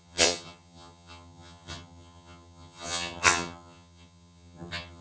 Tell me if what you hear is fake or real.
fake